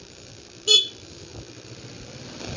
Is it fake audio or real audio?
real